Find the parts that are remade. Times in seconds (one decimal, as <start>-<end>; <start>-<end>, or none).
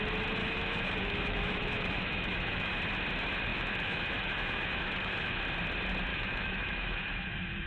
0.4-2.8; 3.5-5.4; 6.1-7.7